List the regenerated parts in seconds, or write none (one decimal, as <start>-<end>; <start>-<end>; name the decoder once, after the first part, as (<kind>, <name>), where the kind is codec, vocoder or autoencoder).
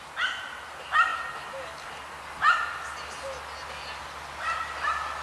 none